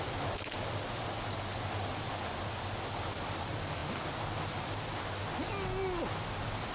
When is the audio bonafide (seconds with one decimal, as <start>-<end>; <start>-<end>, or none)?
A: 0.0-6.7